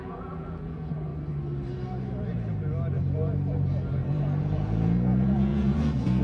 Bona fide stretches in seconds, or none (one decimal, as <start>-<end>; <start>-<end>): 1.1-4.4